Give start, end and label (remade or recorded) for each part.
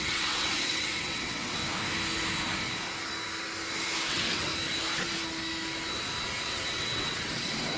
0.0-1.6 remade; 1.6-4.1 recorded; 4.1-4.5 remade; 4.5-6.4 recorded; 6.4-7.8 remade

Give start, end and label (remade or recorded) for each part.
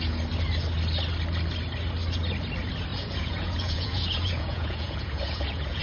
0.0-2.9 recorded; 2.9-5.8 remade